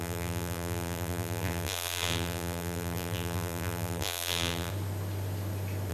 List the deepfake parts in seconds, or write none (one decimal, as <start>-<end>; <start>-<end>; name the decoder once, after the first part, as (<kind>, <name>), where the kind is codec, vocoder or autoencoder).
0.0-4.7 (vocoder, BigVGAN v2)